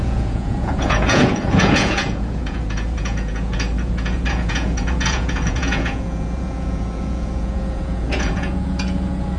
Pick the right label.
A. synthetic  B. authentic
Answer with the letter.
A